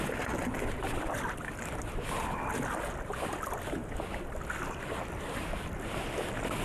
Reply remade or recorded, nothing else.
recorded